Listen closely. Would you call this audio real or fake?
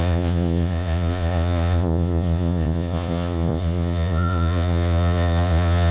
fake